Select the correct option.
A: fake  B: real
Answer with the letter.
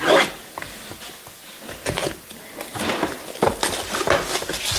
B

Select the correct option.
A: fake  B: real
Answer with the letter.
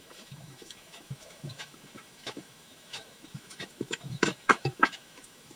A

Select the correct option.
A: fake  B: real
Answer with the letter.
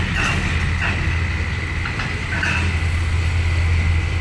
B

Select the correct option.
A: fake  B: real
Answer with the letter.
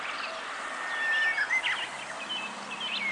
B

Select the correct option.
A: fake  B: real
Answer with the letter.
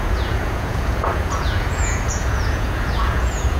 A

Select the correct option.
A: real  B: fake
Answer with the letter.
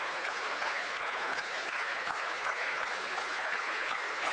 B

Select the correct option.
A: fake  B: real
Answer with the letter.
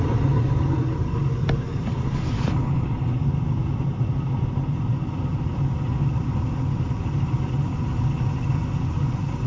B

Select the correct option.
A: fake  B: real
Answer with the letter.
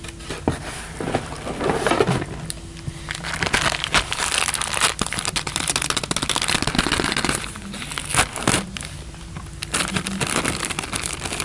B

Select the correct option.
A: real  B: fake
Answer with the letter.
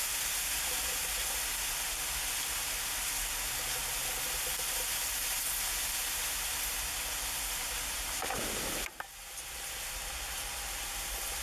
A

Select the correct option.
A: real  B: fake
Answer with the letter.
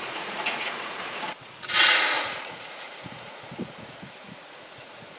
B